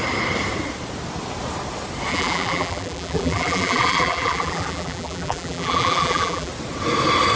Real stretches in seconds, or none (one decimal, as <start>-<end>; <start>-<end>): 0.0-2.1; 6.5-7.3